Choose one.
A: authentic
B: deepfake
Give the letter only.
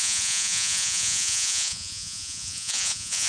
B